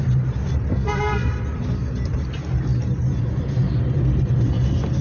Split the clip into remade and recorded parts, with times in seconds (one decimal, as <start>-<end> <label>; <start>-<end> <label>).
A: 0.0-0.7 recorded; 0.7-1.3 remade; 1.3-5.0 recorded